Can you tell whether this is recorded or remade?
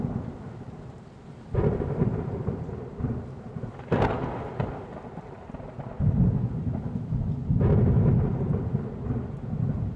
recorded